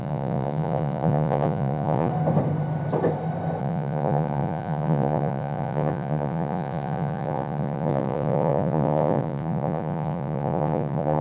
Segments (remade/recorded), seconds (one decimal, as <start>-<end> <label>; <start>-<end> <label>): 0.0-2.1 remade; 2.1-3.6 recorded; 3.6-11.2 remade